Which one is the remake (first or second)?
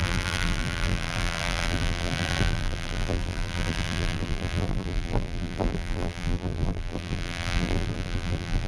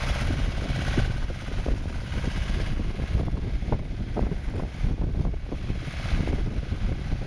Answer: first